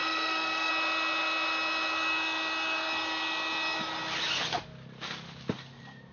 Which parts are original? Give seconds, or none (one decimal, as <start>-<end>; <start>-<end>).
0.7-6.1